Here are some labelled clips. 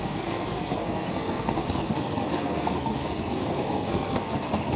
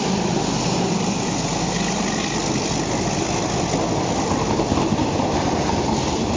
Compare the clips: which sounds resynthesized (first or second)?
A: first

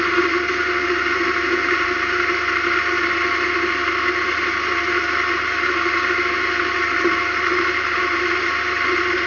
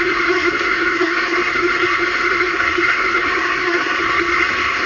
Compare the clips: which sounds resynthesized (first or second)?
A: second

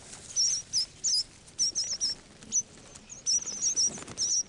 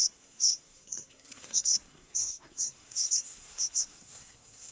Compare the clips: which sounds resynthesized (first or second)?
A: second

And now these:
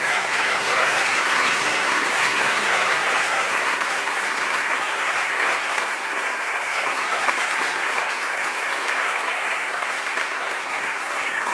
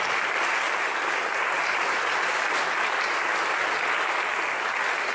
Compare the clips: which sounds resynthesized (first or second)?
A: first